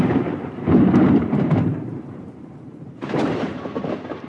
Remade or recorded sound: remade